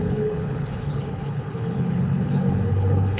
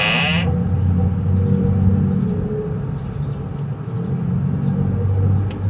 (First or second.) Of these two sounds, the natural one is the second